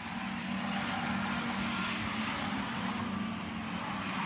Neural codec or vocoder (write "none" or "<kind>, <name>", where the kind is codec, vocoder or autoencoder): none